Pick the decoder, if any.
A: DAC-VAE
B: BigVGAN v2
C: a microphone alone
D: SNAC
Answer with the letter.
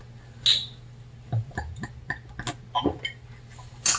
C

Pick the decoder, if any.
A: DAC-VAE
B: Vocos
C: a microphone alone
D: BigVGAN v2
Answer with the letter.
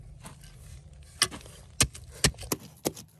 C